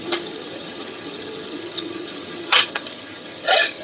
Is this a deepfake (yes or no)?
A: yes